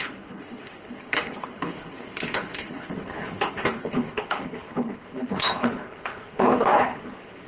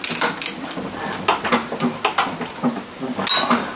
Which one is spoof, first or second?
first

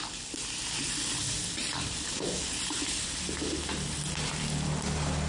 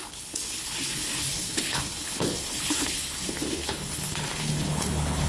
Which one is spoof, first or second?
second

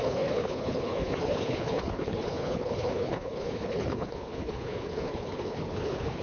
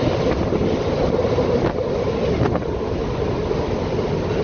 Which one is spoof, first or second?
first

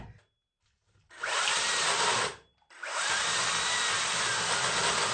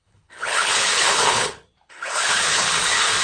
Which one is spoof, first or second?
second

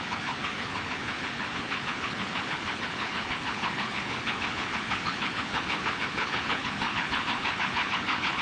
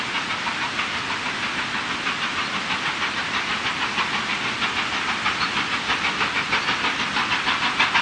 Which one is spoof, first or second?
first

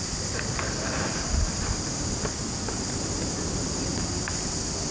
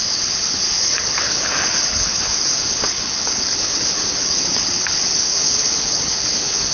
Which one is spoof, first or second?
second